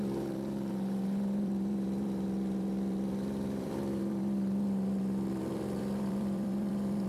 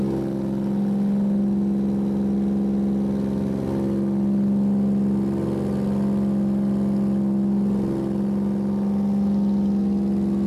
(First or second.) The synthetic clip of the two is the first